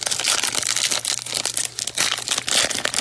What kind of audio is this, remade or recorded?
recorded